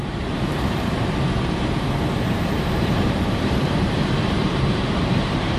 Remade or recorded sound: remade